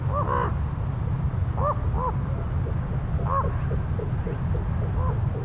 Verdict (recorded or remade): recorded